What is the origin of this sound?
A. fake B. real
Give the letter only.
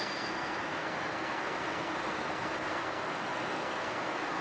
A